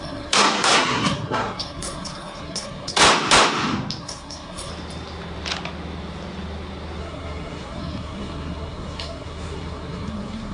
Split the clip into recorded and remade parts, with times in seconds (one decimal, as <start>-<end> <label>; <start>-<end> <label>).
0.0-3.0 remade; 3.0-4.0 recorded; 4.0-4.7 remade; 4.7-7.0 recorded; 7.0-10.5 remade